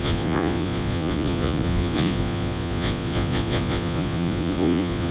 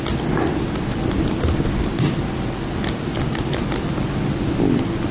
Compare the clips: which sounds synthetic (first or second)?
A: first